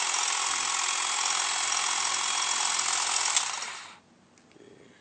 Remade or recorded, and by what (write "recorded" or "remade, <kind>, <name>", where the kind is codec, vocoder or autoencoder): recorded